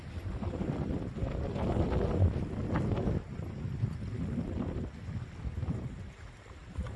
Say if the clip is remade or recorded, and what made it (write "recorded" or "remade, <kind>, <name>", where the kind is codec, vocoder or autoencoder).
recorded